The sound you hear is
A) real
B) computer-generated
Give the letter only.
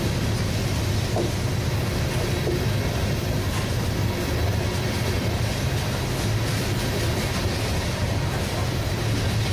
A